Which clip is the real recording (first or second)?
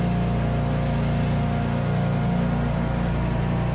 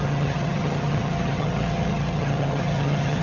first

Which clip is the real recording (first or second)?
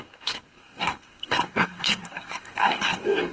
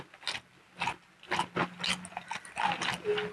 second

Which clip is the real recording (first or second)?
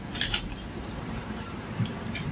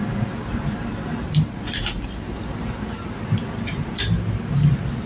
second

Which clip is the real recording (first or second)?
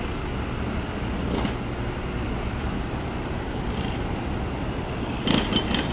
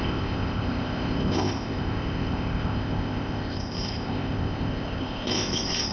first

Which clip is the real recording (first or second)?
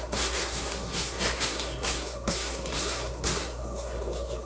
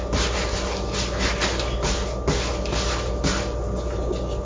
second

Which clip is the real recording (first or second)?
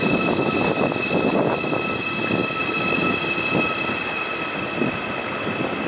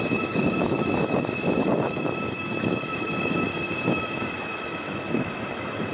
first